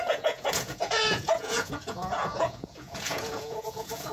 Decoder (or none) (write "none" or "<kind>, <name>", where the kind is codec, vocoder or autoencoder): vocoder, Vocos